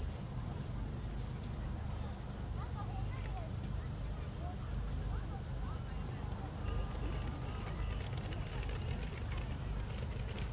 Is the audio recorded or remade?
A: recorded